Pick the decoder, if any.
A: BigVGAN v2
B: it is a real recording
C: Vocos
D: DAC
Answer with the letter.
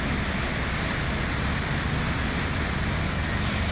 B